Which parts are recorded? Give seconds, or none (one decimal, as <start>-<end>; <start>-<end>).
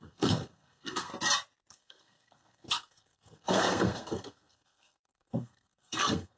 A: 1.1-1.7